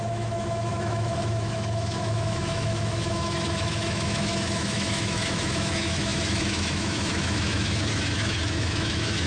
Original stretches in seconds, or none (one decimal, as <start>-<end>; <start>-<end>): none